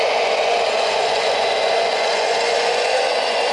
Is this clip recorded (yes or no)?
no